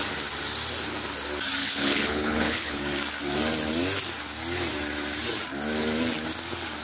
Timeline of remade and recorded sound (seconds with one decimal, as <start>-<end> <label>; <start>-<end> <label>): 0.0-1.6 recorded; 1.6-2.8 remade; 2.8-6.8 recorded